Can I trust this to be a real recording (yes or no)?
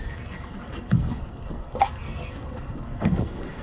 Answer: no